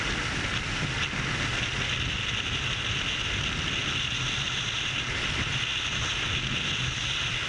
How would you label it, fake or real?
real